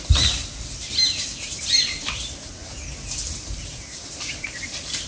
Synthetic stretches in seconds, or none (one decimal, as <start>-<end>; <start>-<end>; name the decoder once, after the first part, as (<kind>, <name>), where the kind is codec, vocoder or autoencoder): 0.0-0.4 (vocoder, BigVGAN v2); 1.0-2.6; 3.3-5.1